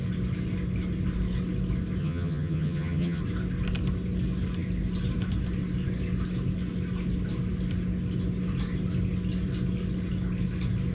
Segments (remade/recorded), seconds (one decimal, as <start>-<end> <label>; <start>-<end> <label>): 0.0-2.0 recorded; 2.0-3.2 remade; 3.2-10.9 recorded